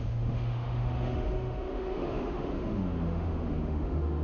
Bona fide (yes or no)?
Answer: no